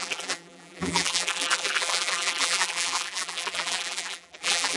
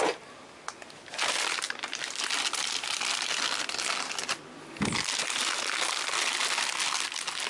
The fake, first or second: first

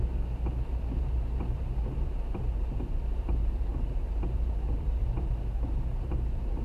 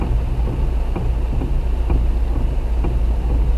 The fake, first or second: first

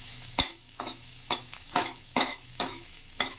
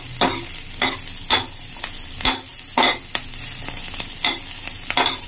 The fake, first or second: first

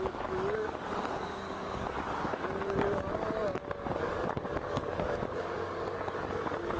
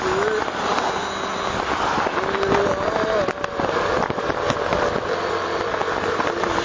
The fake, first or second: first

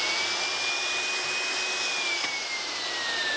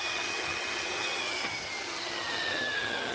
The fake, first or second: second